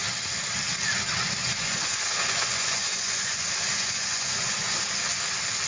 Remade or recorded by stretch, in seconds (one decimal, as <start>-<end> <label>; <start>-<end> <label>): 0.0-1.4 recorded; 1.4-4.8 remade; 4.8-5.7 recorded